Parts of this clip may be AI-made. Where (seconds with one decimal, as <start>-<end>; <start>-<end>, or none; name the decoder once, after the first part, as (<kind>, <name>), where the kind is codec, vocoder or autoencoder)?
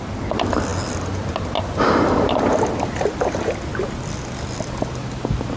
none